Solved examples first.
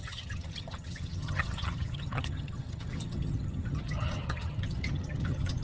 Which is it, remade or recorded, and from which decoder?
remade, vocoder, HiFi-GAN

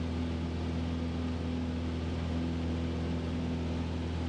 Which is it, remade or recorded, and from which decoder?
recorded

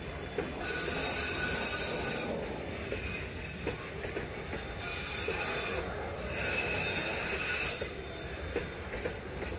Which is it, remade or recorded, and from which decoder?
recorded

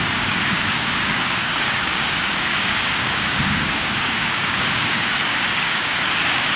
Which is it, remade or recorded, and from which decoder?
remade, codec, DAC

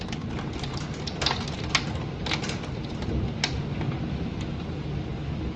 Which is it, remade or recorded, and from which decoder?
recorded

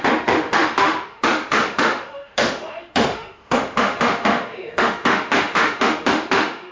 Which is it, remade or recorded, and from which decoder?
remade, autoencoder, DAC-VAE